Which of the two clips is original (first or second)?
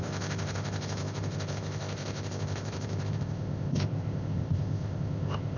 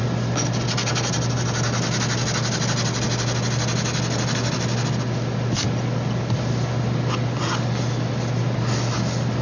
second